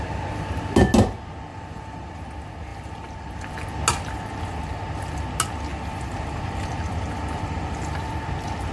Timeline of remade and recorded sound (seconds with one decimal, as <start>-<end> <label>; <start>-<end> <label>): 0.0-1.5 recorded; 1.5-2.1 remade; 2.1-2.7 recorded; 2.7-3.6 remade; 3.6-5.7 recorded; 5.7-8.1 remade; 8.1-8.7 recorded